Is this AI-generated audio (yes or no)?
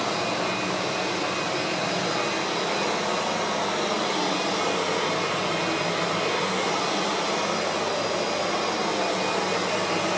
no